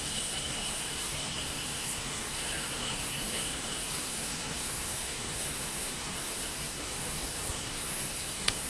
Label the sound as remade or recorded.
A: remade